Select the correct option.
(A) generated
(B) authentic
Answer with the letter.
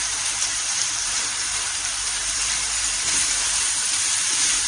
A